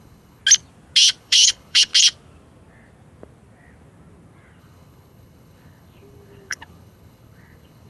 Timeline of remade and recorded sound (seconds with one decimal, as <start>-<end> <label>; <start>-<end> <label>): 0.0-0.4 remade; 0.4-1.2 recorded; 1.2-1.9 remade; 1.9-4.6 recorded; 4.6-7.9 remade